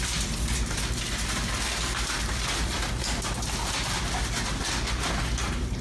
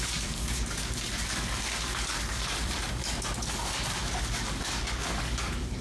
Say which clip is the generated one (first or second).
second